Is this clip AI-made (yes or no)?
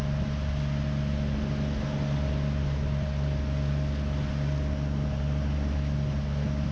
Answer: no